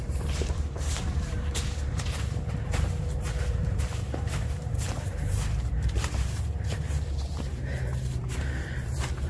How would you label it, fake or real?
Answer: fake